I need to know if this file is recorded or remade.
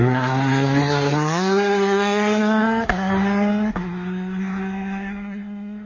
remade